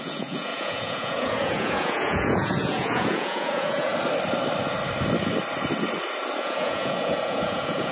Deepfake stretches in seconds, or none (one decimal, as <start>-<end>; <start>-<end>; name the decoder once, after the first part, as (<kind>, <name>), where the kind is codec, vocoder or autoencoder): 0.0-3.9 (vocoder, Vocos); 6.4-7.9